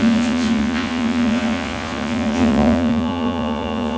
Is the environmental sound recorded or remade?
remade